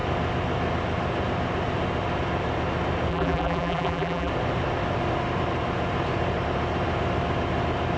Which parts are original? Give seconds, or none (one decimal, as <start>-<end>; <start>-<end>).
0.0-3.1; 4.3-8.0